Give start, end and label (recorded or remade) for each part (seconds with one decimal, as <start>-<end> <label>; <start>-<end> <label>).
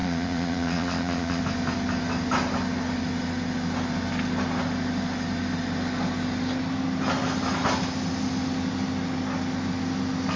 0.0-1.4 remade; 1.4-10.4 recorded